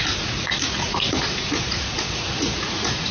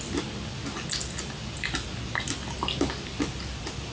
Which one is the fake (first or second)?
first